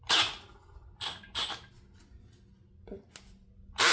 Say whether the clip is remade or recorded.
recorded